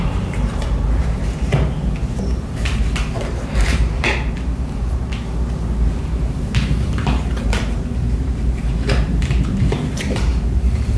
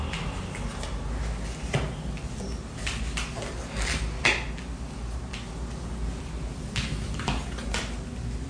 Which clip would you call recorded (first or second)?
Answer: second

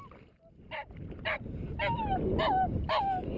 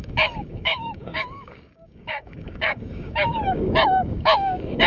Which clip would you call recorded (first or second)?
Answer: first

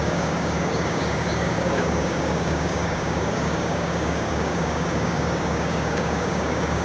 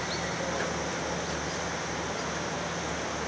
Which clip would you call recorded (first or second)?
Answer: second